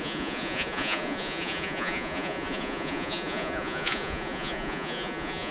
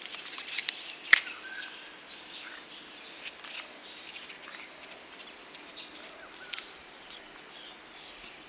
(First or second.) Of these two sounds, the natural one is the second